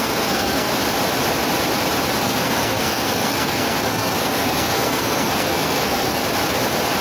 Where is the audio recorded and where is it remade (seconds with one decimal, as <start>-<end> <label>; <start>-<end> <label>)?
0.0-0.7 remade; 0.7-2.2 recorded; 2.2-6.2 remade; 6.2-7.0 recorded